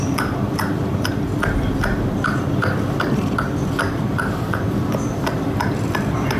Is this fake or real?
fake